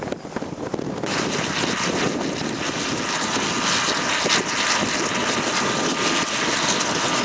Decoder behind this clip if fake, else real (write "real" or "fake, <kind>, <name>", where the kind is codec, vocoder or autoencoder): real